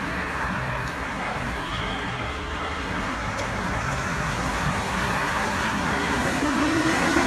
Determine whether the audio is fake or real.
fake